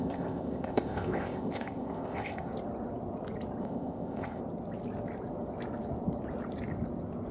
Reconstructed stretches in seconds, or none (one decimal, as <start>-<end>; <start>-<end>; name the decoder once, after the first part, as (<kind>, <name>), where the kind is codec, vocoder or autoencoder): 0.0-2.5 (codec, ZipCodec); 3.6-4.4